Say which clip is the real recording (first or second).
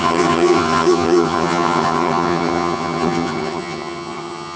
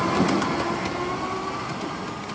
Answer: second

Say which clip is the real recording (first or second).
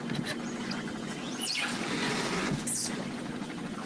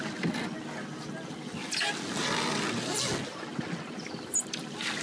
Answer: second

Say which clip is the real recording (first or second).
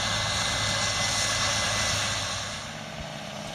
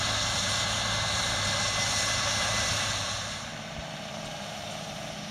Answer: first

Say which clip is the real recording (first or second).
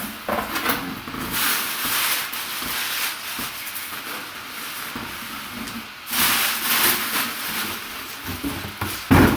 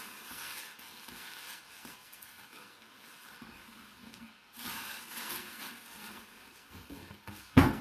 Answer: first